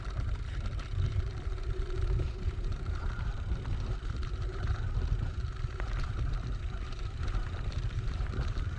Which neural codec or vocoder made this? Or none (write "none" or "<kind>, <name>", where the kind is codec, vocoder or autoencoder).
vocoder, BigVGAN v2